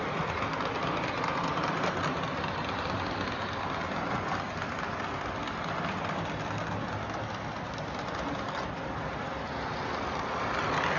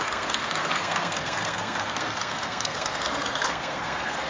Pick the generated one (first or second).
second